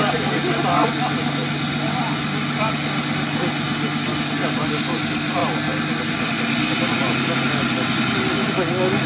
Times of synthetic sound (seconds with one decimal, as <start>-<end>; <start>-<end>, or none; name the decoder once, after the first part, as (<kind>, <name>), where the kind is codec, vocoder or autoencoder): none